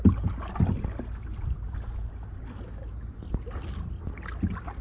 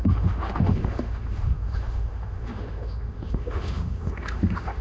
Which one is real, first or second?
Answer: first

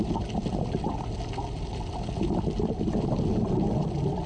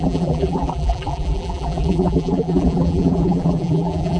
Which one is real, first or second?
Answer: first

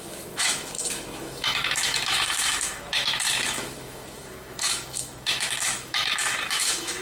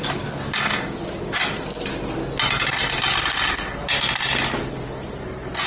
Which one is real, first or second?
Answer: second